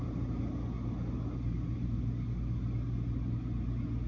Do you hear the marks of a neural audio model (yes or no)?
no